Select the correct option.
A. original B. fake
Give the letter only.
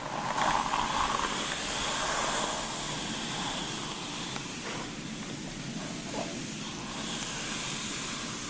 B